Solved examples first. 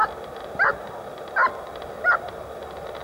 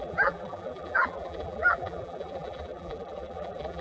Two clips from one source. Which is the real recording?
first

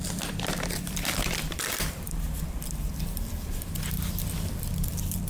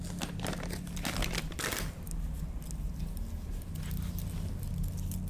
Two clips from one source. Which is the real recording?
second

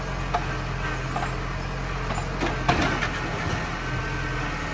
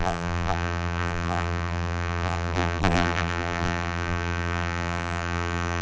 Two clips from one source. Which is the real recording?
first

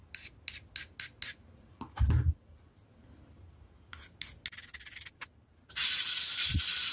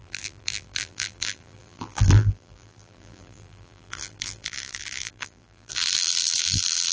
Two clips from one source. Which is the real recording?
first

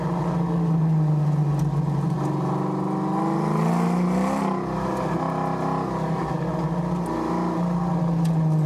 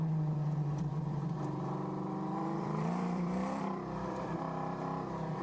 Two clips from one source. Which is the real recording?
first